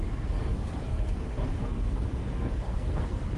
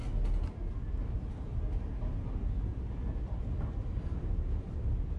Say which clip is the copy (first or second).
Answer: first